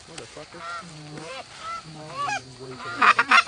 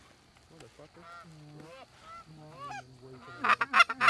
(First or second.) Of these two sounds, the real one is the second